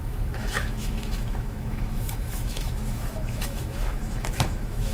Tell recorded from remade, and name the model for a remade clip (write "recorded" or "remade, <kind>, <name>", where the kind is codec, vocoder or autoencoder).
remade, autoencoder, DAC-VAE